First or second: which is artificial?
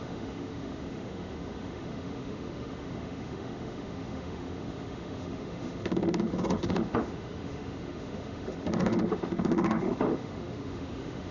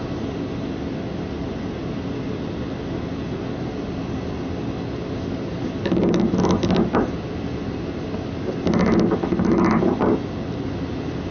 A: first